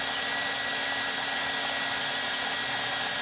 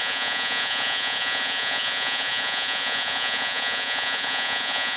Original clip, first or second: first